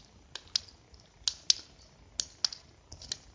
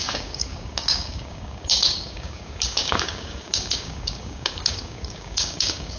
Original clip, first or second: first